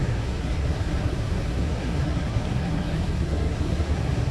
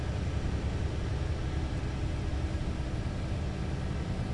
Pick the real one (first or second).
second